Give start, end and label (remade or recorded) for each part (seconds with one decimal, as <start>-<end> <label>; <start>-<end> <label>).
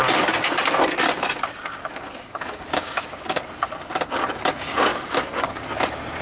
0.0-1.8 recorded; 1.8-3.4 remade; 3.4-4.9 recorded; 4.9-5.5 remade; 5.5-6.2 recorded